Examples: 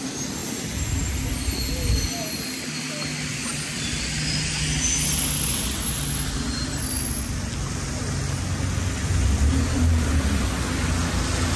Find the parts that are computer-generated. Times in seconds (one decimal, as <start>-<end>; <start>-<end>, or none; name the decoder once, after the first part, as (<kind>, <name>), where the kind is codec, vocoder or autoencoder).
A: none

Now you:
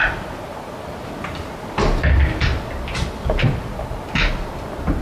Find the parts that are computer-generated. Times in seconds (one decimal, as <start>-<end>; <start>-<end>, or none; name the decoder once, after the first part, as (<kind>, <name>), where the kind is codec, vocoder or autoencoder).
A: none

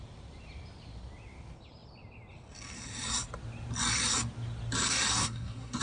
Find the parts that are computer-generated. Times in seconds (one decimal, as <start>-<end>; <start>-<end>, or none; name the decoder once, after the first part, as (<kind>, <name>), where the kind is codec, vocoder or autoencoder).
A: 5.2-5.8 (codec, SNAC)